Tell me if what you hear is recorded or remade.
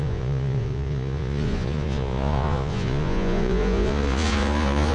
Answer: remade